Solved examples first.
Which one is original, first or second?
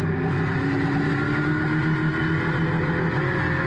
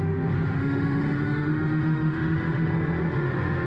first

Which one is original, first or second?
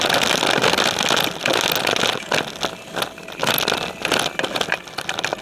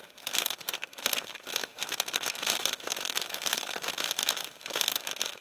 first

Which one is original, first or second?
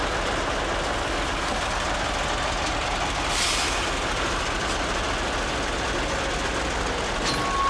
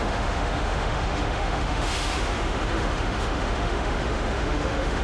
first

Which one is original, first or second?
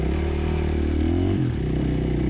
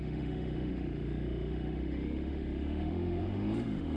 first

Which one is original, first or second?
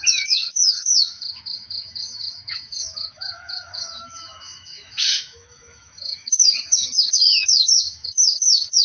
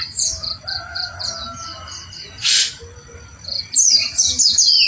second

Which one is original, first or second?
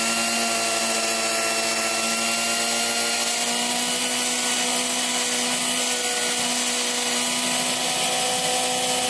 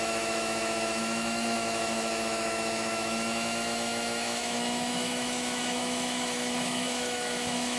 first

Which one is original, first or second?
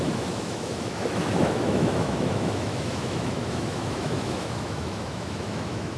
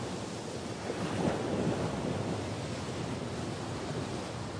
second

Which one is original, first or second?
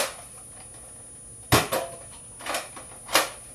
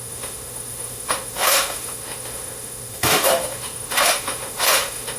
first